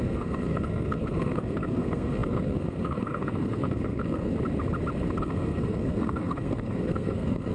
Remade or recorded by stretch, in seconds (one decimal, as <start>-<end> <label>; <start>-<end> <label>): 0.0-4.3 remade; 4.3-5.2 recorded; 5.2-7.5 remade